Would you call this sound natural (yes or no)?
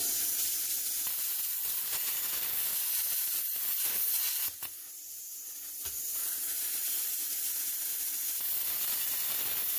yes